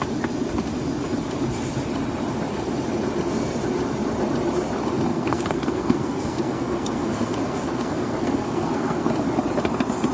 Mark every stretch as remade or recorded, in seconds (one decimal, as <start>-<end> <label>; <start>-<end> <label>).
0.0-5.1 recorded; 5.1-9.1 remade; 9.1-10.1 recorded